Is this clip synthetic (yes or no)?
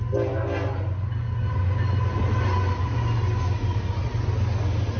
no